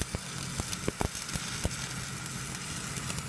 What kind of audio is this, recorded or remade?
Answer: recorded